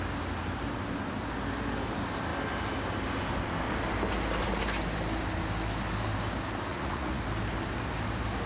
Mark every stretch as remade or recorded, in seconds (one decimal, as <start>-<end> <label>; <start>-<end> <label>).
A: 0.0-6.7 recorded; 6.7-7.2 remade; 7.2-8.5 recorded

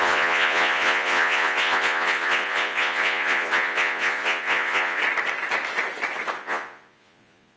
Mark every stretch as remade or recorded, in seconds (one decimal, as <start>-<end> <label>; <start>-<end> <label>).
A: 0.0-5.0 remade; 5.0-6.4 recorded; 6.4-7.6 remade

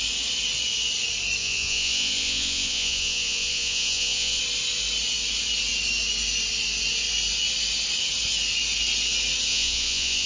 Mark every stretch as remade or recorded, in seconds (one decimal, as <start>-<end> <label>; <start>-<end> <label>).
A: 0.0-1.4 recorded; 1.4-4.4 remade; 4.4-9.5 recorded; 9.5-10.3 remade

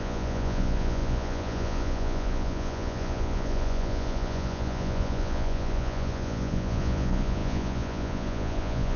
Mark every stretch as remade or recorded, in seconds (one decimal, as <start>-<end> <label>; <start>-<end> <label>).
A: 0.0-9.0 remade